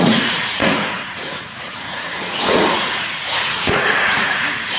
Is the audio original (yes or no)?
no